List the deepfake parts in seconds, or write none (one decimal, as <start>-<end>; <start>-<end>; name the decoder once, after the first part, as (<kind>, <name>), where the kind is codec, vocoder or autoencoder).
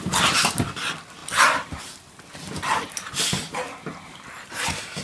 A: none